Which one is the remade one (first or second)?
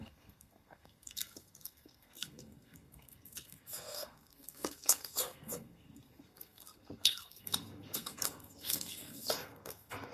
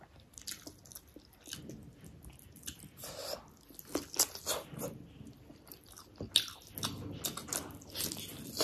first